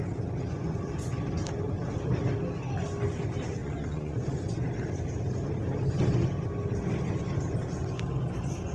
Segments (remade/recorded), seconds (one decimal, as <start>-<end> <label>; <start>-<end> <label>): 0.0-3.6 recorded; 3.6-4.3 remade; 4.3-8.7 recorded